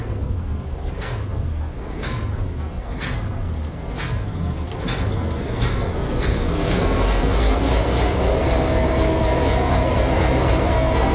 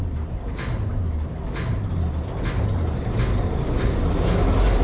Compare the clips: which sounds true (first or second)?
second